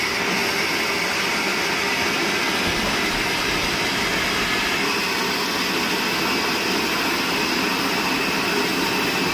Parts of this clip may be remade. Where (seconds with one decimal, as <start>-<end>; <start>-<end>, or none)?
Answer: none